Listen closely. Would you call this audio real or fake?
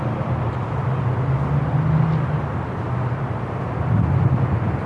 real